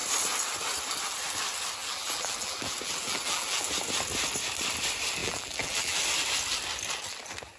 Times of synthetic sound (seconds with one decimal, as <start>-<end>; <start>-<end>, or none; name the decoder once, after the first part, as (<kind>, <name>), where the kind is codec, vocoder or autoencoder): 1.8-3.8 (vocoder, BigVGAN v2); 5.2-6.0